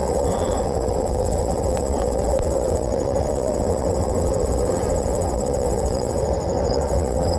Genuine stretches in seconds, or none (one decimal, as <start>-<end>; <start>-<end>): none